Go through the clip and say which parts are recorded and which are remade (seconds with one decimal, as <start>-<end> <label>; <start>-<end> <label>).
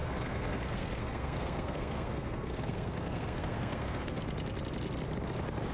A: 0.0-4.2 remade; 4.2-5.7 recorded